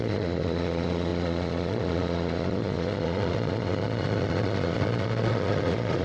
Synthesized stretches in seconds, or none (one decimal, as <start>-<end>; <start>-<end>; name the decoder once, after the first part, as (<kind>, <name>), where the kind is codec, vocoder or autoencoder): 0.0-6.0 (vocoder, Vocos)